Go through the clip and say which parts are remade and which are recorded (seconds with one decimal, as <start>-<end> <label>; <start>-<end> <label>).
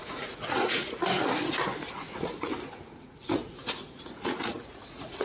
0.0-1.0 remade; 1.0-1.9 recorded; 1.9-2.5 remade; 2.5-3.0 recorded; 3.0-5.2 remade